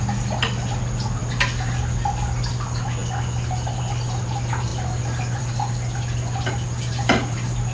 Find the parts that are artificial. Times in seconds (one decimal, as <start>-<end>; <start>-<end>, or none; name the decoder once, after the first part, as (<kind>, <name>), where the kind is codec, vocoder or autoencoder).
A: none